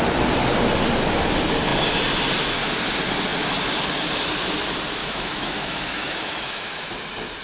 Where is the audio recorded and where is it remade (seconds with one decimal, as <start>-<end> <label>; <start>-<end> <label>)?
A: 0.0-5.0 recorded; 5.0-6.9 remade; 6.9-7.4 recorded

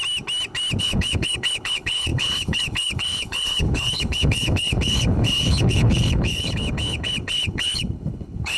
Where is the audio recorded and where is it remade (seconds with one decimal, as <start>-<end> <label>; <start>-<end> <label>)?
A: 0.0-0.8 recorded; 0.8-8.6 remade

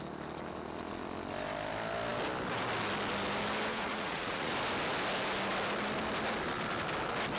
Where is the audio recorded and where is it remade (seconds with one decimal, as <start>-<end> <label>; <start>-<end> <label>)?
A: 0.0-3.7 recorded; 3.7-4.5 remade; 4.5-7.4 recorded

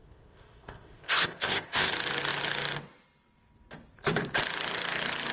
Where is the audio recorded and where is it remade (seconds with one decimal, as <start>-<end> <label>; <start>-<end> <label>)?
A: 0.0-1.9 remade; 1.9-5.3 recorded

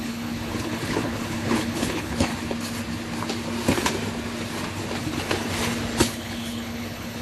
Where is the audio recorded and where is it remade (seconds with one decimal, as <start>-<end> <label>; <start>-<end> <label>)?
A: 0.0-2.3 remade; 2.3-5.0 recorded; 5.0-5.5 remade; 5.5-6.0 recorded; 6.0-7.2 remade

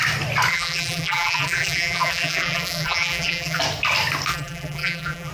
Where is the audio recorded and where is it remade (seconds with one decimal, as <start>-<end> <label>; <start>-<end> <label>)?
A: 0.0-0.5 recorded; 0.5-3.6 remade; 3.6-4.3 recorded; 4.3-5.3 remade

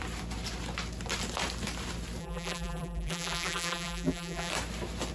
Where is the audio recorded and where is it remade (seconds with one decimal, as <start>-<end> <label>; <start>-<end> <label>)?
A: 0.0-2.2 recorded; 2.2-4.5 remade; 4.5-5.1 recorded

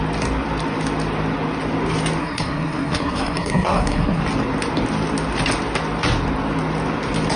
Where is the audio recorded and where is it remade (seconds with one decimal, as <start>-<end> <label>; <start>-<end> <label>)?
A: 0.0-2.2 recorded; 2.2-4.2 remade; 4.2-7.4 recorded